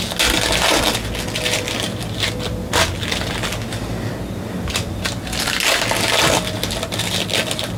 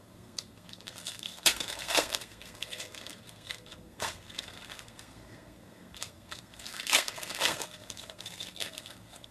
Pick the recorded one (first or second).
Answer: first